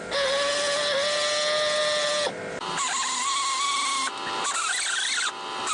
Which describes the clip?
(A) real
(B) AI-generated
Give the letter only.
A